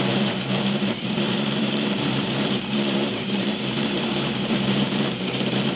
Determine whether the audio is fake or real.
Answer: fake